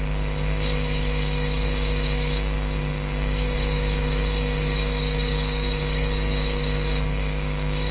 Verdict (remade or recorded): remade